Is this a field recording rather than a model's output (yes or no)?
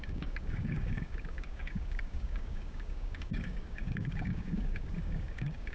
no